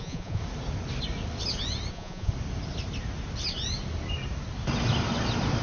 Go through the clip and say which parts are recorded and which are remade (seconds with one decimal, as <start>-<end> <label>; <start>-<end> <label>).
0.0-0.4 remade; 0.4-1.9 recorded; 1.9-2.3 remade; 2.3-5.6 recorded